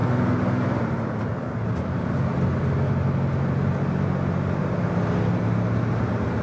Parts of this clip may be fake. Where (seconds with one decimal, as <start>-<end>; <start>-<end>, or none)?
none